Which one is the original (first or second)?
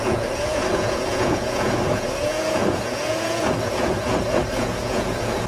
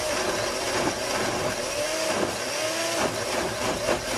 second